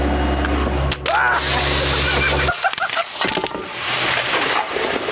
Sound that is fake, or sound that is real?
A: real